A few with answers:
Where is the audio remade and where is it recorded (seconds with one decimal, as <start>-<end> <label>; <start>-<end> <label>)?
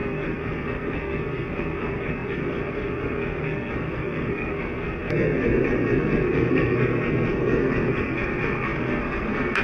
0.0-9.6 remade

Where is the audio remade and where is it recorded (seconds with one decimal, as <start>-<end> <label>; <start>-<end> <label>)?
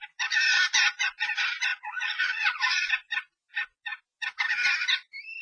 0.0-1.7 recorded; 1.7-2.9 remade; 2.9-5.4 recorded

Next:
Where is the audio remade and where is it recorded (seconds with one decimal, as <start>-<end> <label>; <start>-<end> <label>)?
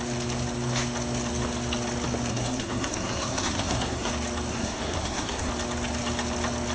0.0-2.3 recorded; 2.3-4.1 remade; 4.1-4.5 recorded; 4.5-5.5 remade; 5.5-6.7 recorded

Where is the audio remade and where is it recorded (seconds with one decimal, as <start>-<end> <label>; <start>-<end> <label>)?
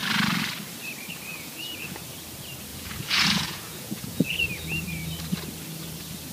0.0-1.3 recorded; 1.3-2.0 remade; 2.0-2.7 recorded; 2.7-4.5 remade; 4.5-6.3 recorded